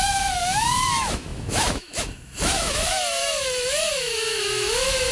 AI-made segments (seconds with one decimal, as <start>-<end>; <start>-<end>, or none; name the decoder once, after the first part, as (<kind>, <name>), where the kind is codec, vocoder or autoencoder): 0.0-5.1 (autoencoder, DAC-VAE)